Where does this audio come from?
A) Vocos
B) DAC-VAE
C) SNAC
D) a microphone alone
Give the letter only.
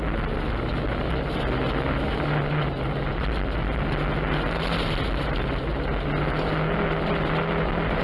D